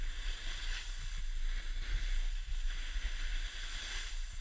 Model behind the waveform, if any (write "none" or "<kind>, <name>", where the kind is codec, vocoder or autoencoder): none